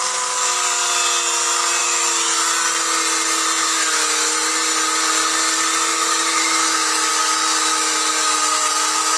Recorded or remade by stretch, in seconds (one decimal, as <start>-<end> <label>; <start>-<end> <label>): 0.0-1.8 recorded; 1.8-2.4 remade; 2.4-3.6 recorded; 3.6-4.5 remade; 4.5-5.9 recorded; 5.9-7.1 remade; 7.1-9.2 recorded

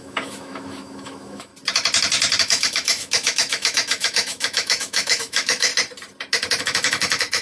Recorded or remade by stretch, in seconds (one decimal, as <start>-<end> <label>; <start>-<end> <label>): 0.0-1.5 remade; 1.5-2.4 recorded; 2.4-5.7 remade; 5.7-6.6 recorded; 6.6-7.4 remade

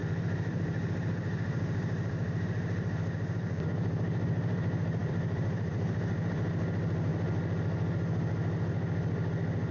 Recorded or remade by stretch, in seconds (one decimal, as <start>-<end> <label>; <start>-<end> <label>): 0.0-7.1 remade; 7.1-9.7 recorded

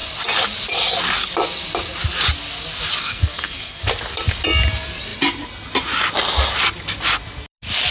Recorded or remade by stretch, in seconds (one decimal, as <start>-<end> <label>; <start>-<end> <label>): 0.0-3.0 recorded; 3.0-3.8 remade; 3.8-7.9 recorded

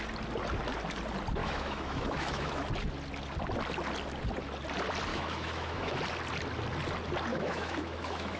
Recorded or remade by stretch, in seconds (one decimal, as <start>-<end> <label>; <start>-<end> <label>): 0.0-1.4 recorded; 1.4-2.7 remade; 2.7-5.1 recorded; 5.1-6.0 remade; 6.0-7.3 recorded; 7.3-8.4 remade

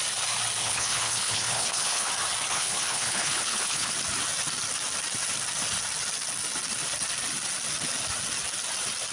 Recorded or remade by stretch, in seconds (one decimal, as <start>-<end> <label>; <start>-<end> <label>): 0.0-0.6 recorded; 0.6-2.1 remade; 2.1-2.5 recorded; 2.5-3.9 remade; 3.9-9.1 recorded

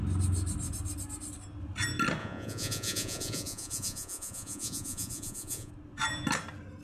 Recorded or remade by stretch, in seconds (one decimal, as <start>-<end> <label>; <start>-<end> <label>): 0.0-2.2 recorded; 2.2-5.7 remade; 5.7-6.8 recorded